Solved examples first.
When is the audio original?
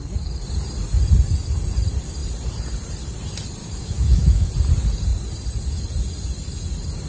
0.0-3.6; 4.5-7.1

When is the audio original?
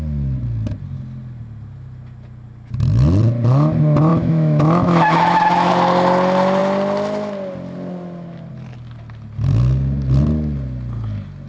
0.0-4.1; 5.7-11.5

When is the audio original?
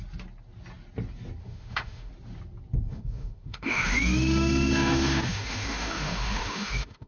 0.0-1.4; 2.1-2.9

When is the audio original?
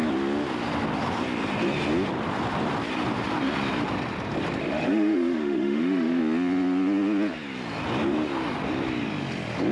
0.0-4.6; 6.2-9.7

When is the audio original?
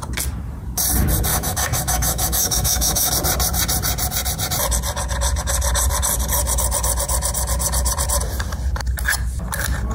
0.0-1.3; 3.1-9.9